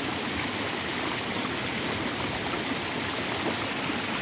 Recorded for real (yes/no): yes